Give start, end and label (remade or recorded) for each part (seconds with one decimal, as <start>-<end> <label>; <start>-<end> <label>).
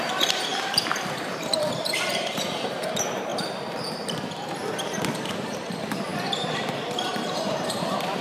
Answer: 0.0-3.3 remade; 3.3-4.7 recorded; 4.7-8.2 remade